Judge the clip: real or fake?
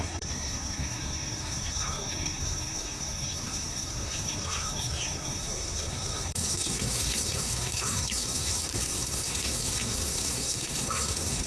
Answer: fake